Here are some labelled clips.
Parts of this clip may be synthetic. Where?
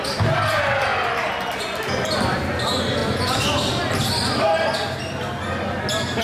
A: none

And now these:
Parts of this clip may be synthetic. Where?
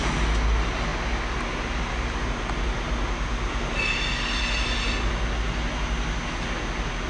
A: none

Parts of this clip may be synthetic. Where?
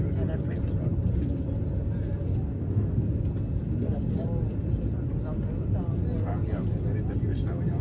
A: 2.6-3.1 (codec, SNAC)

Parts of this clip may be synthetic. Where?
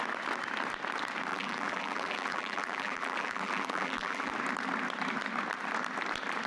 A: 1.3-4.3 (vocoder, BigVGAN v2)